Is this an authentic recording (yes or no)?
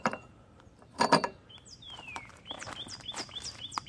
no